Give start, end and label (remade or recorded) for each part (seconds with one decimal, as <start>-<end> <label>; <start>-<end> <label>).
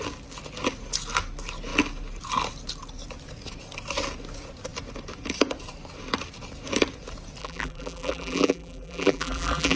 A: 0.0-7.4 recorded; 7.4-9.8 remade